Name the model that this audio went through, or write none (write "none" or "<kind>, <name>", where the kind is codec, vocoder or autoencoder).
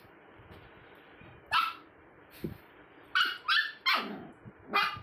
none